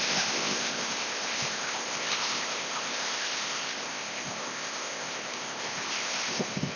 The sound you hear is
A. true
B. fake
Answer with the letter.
B